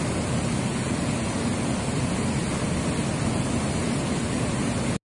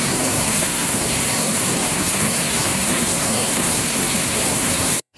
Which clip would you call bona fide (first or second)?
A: first